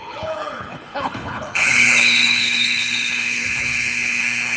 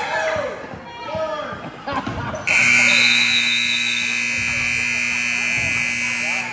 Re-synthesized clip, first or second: first